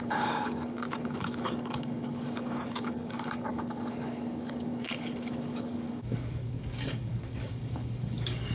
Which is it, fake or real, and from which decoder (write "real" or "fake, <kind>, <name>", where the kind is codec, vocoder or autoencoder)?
fake, codec, DAC